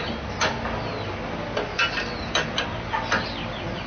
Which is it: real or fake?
real